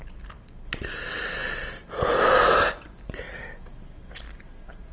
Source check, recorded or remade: recorded